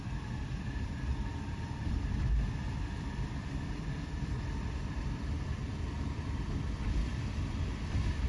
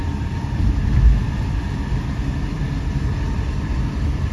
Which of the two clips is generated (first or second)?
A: first